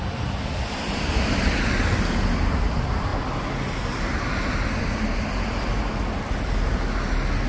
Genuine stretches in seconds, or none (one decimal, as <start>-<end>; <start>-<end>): 0.0-7.5